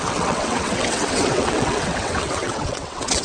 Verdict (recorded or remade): remade